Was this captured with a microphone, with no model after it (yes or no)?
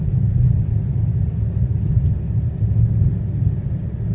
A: yes